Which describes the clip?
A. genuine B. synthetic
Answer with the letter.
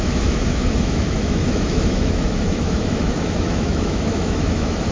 B